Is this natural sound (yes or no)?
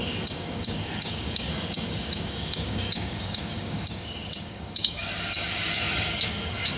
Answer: no